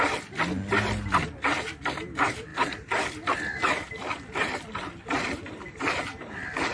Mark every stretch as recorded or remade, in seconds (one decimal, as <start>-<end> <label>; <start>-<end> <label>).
0.0-6.7 recorded